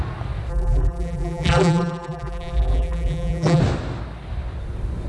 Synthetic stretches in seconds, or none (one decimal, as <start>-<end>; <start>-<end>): 0.5-3.6